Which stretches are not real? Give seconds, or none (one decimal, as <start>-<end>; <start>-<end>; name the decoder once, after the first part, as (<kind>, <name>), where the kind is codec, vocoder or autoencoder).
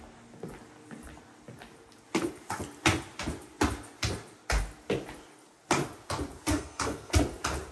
6.5-7.1 (codec, SNAC)